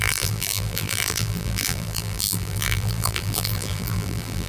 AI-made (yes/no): yes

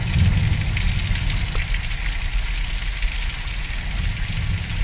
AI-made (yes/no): no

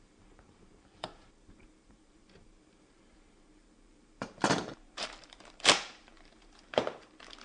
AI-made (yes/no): yes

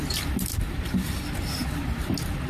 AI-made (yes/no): no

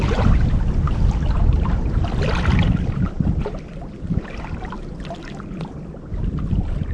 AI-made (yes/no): yes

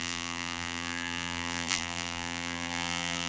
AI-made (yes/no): yes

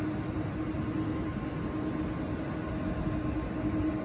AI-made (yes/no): no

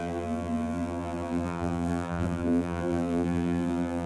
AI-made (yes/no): yes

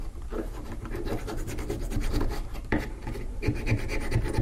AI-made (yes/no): yes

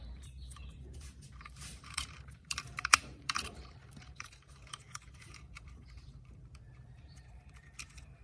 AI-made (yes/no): yes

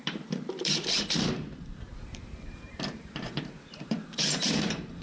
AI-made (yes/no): yes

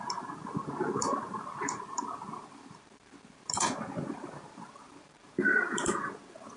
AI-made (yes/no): yes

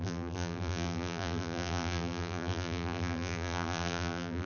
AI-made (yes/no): yes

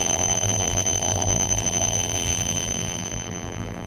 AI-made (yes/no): yes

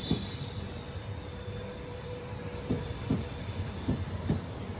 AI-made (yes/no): yes